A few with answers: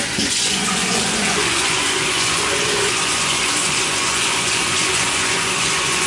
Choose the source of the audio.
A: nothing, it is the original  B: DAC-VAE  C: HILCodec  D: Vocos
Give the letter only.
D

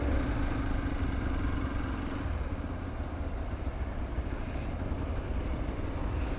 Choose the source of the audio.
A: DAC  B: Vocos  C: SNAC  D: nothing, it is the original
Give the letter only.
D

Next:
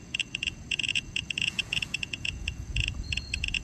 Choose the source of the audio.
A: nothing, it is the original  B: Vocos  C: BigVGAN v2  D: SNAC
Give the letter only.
B